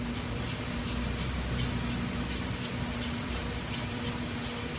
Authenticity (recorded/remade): recorded